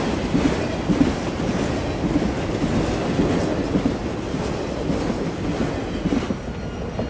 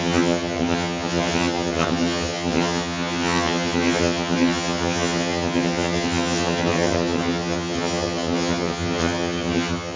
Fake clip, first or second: second